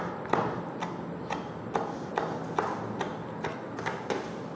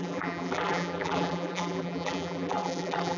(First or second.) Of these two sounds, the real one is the first